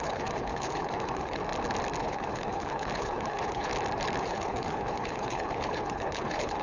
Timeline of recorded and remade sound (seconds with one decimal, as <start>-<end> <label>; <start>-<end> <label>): 0.0-1.4 remade; 1.4-2.0 recorded; 2.0-3.7 remade; 3.7-4.2 recorded; 4.2-6.6 remade